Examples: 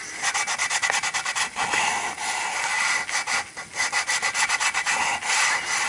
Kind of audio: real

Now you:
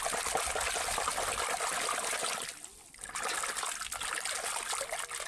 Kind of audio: real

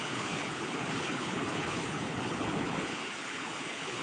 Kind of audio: fake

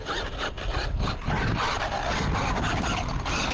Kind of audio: real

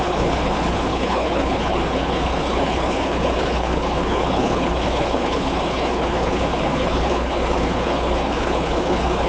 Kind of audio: fake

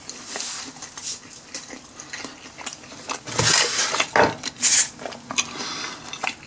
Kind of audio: real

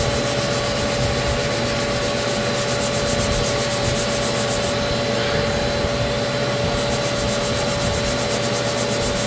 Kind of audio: real